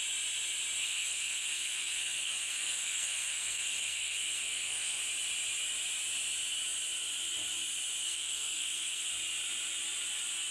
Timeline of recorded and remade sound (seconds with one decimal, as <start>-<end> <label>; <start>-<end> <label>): 0.0-0.8 recorded; 0.8-5.0 remade; 5.0-8.0 recorded; 8.0-9.1 remade; 9.1-10.5 recorded